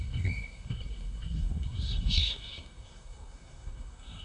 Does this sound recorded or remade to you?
remade